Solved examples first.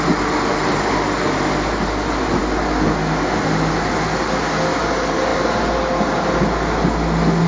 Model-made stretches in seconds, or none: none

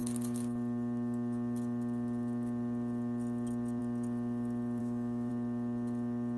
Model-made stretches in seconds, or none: 4.8-5.3 (autoencoder, DAC-VAE)

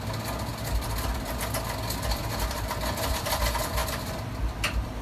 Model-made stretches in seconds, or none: 3.8-4.3 (vocoder, BigVGAN v2)

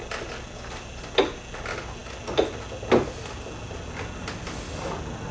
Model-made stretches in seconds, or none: none

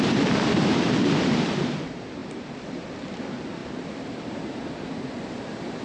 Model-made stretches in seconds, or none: 0.0-3.6 (vocoder, BigVGAN v2)

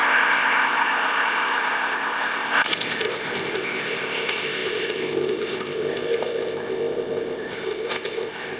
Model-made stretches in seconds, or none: 0.0-8.6 (codec, ZipCodec)